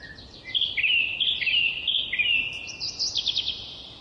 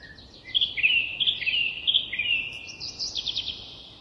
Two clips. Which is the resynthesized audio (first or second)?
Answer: second